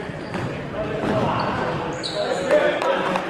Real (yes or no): yes